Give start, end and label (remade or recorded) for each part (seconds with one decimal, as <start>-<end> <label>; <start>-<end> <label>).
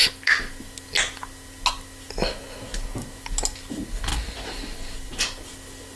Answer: 0.0-6.0 recorded